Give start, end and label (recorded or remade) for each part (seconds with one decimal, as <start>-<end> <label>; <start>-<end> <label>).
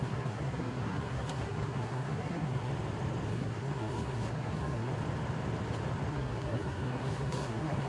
0.0-2.7 remade; 2.7-3.3 recorded; 3.3-4.9 remade; 4.9-6.1 recorded; 6.1-7.9 remade